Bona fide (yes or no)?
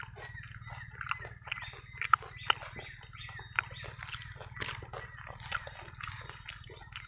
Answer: yes